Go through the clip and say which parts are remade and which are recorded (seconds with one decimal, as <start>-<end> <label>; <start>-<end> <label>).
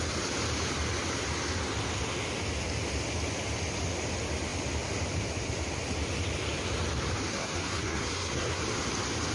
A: 0.0-7.3 recorded; 7.3-8.6 remade; 8.6-9.3 recorded